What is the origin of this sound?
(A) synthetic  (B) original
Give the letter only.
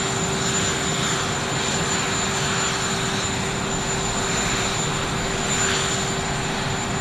B